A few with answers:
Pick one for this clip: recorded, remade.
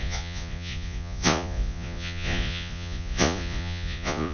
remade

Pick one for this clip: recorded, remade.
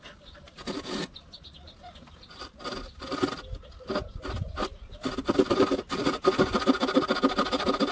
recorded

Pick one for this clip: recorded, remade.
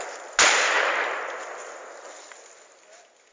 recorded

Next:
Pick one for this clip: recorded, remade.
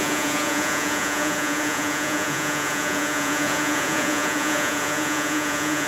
remade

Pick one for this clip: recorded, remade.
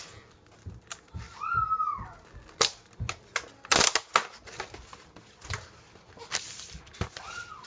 recorded